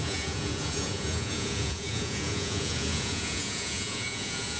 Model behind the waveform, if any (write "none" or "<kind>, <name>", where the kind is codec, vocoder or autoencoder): vocoder, Vocos